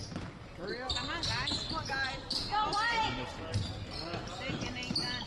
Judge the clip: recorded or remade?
recorded